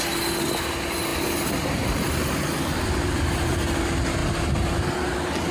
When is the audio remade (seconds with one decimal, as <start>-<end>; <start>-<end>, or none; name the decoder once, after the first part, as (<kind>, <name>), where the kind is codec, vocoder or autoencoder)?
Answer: 1.1-3.8 (vocoder, BigVGAN v2)